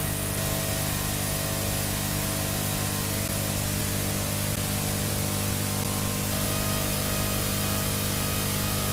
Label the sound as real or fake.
real